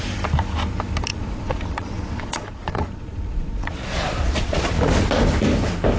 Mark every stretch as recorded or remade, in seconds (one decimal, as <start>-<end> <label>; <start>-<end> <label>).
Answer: 0.0-1.1 recorded; 1.1-4.7 remade; 4.7-6.0 recorded